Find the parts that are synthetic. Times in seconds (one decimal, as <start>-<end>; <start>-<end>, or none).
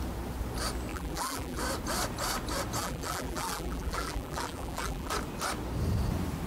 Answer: 0.9-1.6; 2.8-5.1